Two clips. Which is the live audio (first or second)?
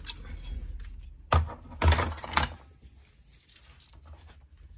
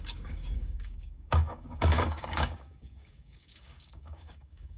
first